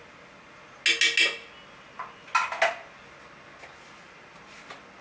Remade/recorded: recorded